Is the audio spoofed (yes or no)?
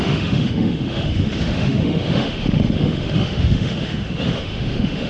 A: yes